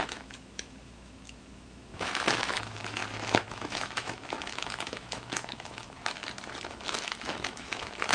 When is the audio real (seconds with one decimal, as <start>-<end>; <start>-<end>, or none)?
3.0-3.5; 6.2-6.7